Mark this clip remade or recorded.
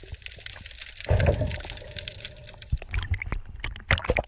recorded